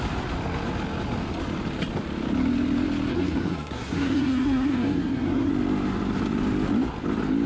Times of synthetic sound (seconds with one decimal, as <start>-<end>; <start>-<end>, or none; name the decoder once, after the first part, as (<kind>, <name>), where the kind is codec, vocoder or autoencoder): 3.1-5.5 (codec, SNAC)